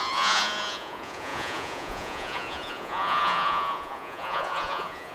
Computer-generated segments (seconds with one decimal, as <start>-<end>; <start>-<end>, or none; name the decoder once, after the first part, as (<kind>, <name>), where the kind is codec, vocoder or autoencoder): 0.0-5.1 (vocoder, Vocos)